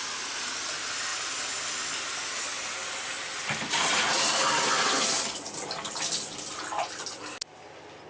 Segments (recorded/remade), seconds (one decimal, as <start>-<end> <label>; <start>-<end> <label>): 0.0-8.1 recorded